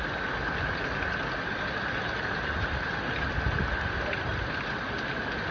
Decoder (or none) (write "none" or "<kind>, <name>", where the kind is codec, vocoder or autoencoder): none